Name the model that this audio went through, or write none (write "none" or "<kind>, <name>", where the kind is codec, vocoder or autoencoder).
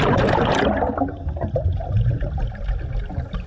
none